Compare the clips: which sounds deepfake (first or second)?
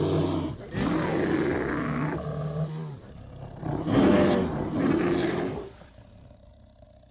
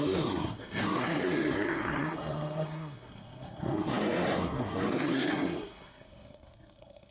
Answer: second